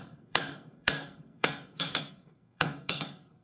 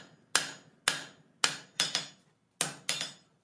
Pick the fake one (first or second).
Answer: first